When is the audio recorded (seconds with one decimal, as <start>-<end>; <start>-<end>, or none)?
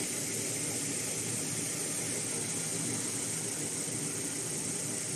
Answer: 0.0-5.2